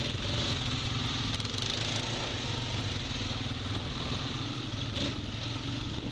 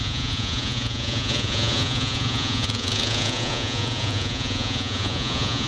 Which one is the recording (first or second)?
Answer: first